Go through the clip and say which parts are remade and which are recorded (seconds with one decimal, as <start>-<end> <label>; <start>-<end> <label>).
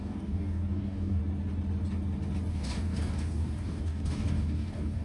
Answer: 0.0-1.2 remade; 1.2-2.5 recorded; 2.5-5.0 remade